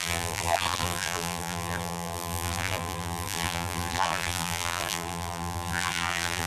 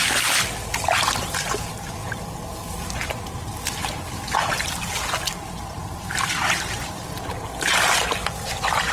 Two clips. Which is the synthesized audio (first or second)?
first